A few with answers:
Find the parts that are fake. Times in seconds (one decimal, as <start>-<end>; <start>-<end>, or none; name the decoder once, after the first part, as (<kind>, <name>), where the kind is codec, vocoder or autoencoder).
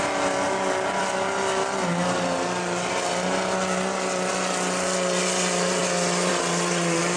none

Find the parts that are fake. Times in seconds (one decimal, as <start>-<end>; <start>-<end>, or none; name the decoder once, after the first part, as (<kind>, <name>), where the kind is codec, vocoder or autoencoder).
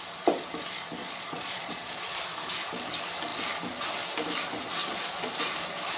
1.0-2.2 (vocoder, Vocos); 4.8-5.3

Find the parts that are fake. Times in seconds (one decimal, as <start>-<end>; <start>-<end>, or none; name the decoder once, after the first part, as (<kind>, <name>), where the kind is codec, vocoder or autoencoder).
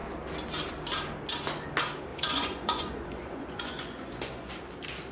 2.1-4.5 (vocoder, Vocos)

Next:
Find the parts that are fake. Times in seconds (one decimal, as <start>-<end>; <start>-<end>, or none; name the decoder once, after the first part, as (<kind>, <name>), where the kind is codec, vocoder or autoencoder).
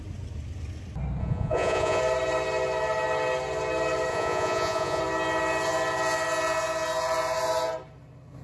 1.2-2.0 (vocoder, Vocos); 4.1-5.0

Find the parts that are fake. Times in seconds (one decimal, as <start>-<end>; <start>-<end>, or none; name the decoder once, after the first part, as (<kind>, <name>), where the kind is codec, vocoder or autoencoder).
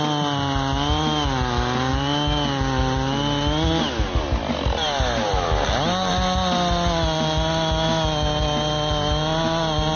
none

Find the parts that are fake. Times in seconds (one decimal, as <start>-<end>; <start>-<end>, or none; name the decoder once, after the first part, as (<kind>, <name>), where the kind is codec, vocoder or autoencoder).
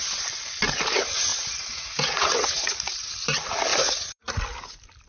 1.3-3.1 (vocoder, Vocos); 3.7-4.2